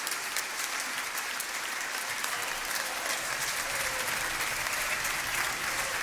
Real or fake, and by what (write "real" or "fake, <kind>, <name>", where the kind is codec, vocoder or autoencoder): fake, vocoder, BigVGAN v2